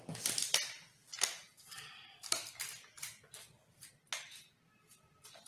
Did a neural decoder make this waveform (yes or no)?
no